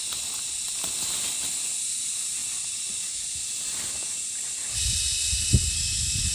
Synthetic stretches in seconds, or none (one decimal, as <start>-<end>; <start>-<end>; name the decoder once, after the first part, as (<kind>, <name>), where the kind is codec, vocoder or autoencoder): none